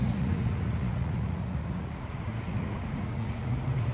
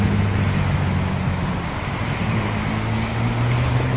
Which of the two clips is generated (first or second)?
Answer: first